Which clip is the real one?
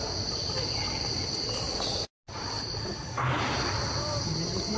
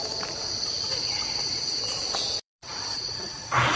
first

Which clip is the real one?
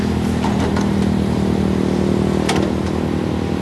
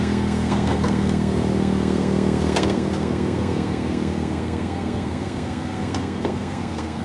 first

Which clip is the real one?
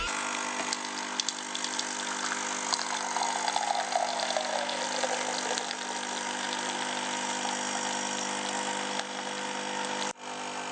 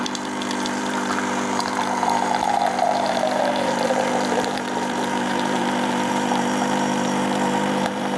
first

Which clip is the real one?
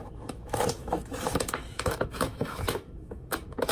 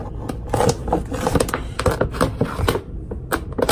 second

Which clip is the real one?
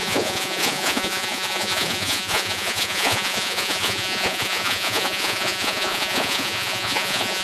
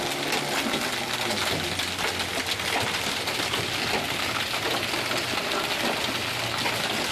second